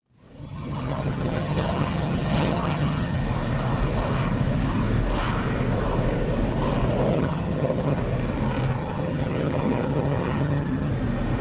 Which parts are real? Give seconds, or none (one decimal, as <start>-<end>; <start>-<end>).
0.0-0.4; 3.2-7.1; 8.0-8.8; 10.9-11.4